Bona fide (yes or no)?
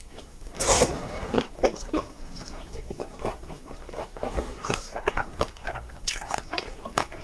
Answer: no